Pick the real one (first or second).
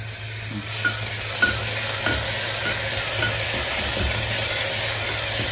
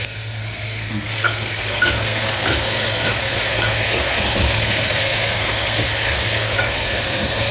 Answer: first